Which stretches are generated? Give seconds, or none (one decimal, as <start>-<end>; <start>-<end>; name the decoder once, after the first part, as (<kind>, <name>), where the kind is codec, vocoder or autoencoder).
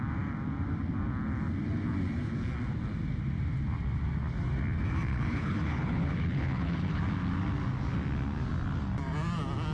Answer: 5.1-7.0 (codec, HILCodec)